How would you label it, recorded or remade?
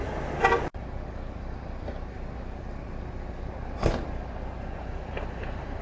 recorded